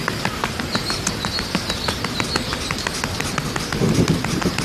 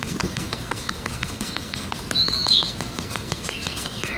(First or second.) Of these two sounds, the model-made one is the second